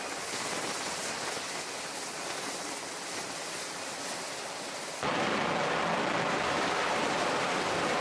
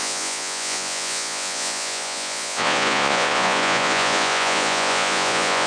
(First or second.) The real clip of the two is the first